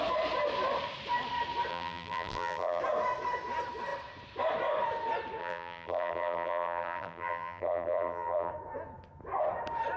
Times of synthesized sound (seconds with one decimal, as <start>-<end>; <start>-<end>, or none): 1.7-2.8; 5.4-8.5